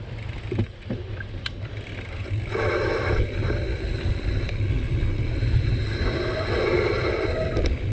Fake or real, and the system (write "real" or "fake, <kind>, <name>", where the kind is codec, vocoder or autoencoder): fake, vocoder, BigVGAN v2